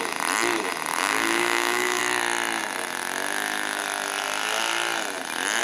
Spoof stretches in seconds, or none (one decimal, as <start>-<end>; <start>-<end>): 0.9-2.0